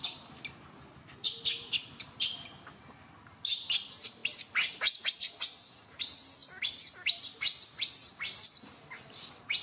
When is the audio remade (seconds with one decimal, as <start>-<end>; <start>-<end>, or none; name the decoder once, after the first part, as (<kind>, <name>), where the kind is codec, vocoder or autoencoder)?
none